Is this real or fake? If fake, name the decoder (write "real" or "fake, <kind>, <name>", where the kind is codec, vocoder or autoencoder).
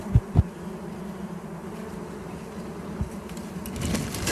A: real